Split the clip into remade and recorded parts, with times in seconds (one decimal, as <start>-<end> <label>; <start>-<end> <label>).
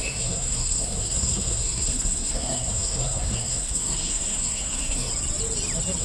0.0-5.1 remade; 5.1-6.0 recorded